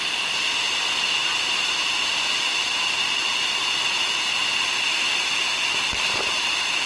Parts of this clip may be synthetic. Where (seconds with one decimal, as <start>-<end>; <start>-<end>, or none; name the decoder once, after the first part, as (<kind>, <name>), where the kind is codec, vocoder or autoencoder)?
1.2-2.5 (vocoder, BigVGAN v2); 3.3-4.4; 5.3-6.5